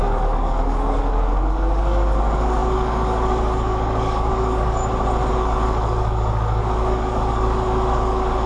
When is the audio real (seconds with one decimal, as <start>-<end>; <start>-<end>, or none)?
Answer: 4.8-5.3